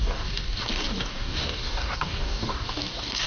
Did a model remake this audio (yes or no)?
yes